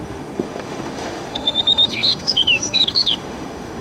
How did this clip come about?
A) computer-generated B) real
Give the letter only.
A